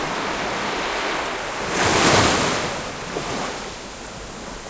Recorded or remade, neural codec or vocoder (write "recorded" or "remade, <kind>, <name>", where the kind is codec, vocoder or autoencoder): recorded